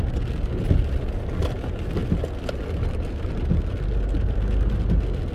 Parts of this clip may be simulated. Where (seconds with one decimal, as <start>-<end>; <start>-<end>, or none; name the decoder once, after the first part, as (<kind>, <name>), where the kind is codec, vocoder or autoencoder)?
none